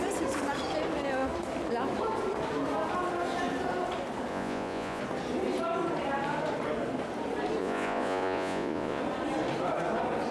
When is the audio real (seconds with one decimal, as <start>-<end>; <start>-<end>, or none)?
0.0-4.3; 5.0-7.6; 9.0-10.3